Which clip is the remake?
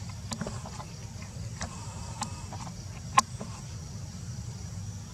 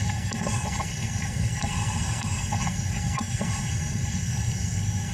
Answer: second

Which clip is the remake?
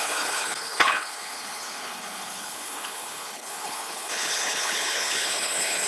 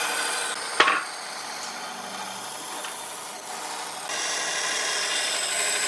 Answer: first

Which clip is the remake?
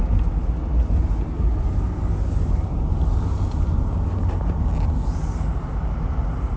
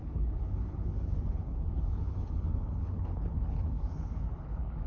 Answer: second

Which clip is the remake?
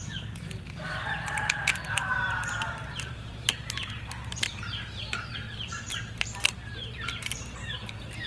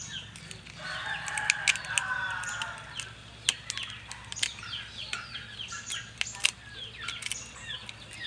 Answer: first